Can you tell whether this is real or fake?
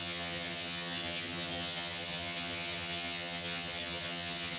fake